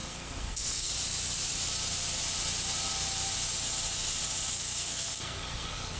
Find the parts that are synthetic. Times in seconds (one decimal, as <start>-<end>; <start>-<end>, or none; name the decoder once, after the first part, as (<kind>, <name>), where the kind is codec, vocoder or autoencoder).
0.0-0.9 (codec, SNAC); 4.5-6.0